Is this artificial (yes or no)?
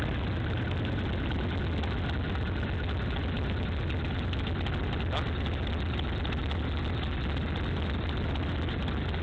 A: no